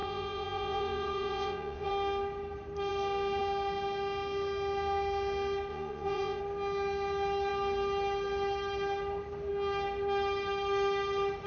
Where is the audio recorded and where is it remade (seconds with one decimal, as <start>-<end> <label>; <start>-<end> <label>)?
0.0-1.9 remade; 1.9-5.7 recorded; 5.7-6.4 remade; 6.4-11.5 recorded